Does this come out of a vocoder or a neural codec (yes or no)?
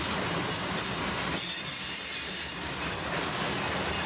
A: no